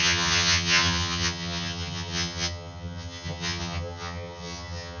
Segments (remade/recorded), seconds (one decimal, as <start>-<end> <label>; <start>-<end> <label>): 0.0-5.0 remade